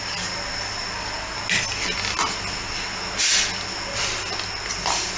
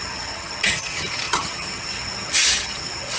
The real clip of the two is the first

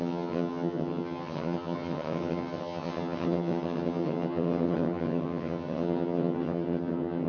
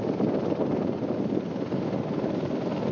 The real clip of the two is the second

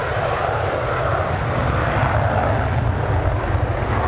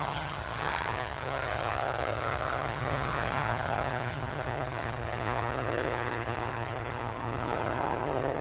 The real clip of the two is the first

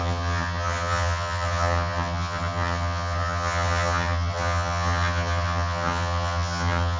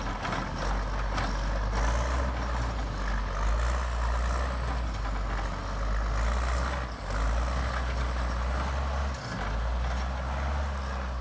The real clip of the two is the second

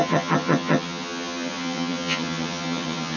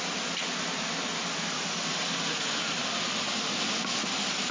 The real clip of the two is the second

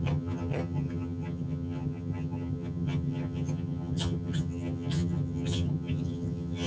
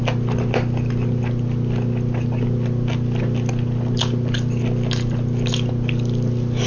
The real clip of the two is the second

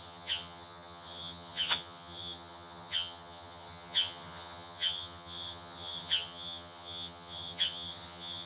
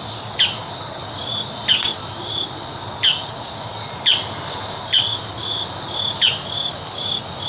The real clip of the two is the second